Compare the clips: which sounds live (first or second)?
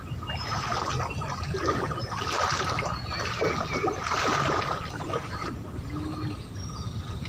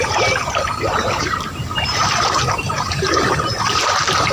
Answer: first